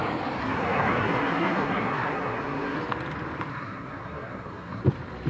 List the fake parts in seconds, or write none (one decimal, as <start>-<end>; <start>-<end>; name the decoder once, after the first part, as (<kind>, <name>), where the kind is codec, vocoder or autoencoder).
0.4-2.8 (codec, SNAC); 3.5-4.8